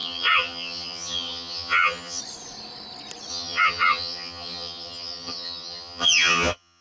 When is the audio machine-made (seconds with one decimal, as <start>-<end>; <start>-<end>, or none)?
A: 0.0-2.2; 3.3-6.8